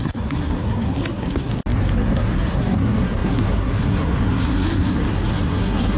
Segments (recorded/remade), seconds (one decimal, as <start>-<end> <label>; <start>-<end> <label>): 0.0-1.5 remade; 1.5-2.0 recorded; 2.0-6.0 remade